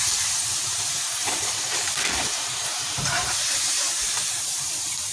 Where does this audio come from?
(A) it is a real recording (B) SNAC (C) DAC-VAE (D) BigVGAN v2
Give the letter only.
D